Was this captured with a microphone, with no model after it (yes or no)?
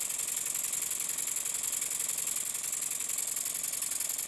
yes